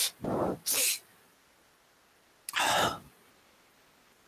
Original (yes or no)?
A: yes